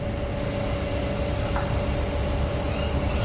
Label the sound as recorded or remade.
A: recorded